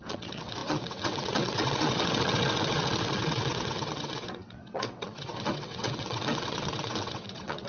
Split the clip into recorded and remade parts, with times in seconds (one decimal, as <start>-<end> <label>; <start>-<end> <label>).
0.0-7.7 remade